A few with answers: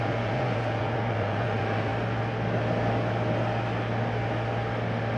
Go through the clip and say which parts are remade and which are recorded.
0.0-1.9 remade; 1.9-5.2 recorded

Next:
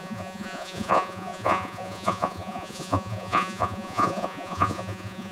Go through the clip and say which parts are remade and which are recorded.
0.0-5.3 remade

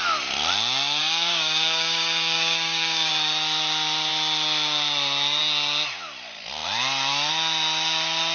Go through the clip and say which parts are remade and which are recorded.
0.0-1.0 recorded; 1.0-3.1 remade; 3.1-8.3 recorded

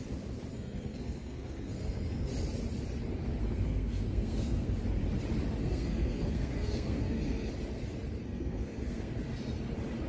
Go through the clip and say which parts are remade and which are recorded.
0.0-0.5 recorded; 0.5-2.3 remade; 2.3-3.4 recorded; 3.4-4.7 remade; 4.7-5.6 recorded; 5.6-7.5 remade; 7.5-8.2 recorded; 8.2-9.1 remade; 9.1-10.1 recorded

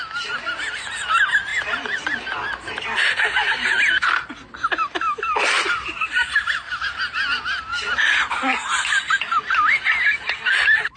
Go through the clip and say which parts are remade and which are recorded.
0.0-11.0 recorded

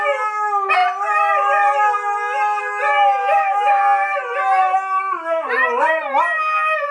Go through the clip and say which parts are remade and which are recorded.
0.0-3.2 recorded; 3.2-3.8 remade; 3.8-6.9 recorded